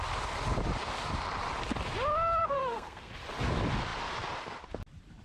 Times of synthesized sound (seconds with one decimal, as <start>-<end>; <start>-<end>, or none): 2.4-3.1